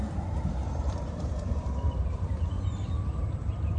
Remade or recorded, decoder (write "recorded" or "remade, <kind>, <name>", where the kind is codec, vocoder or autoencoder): remade, vocoder, BigVGAN v2